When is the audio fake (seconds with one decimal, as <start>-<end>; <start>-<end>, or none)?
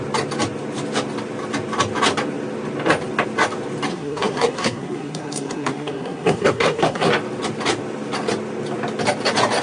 3.9-7.1